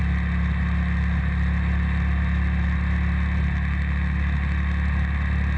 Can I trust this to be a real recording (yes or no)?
yes